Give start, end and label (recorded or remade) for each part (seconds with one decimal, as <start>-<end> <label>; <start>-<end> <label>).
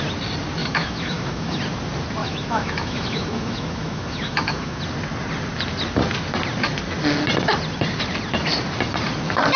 0.0-0.6 recorded; 0.6-1.6 remade; 1.6-2.2 recorded; 2.2-4.8 remade; 4.8-9.6 recorded